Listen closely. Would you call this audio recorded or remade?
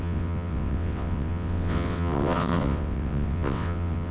remade